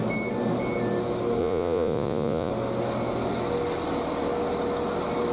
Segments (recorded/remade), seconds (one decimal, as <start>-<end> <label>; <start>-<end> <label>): 0.0-1.4 recorded; 1.4-2.5 remade; 2.5-5.3 recorded